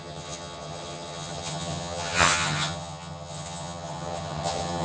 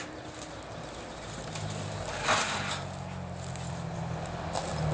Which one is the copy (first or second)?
first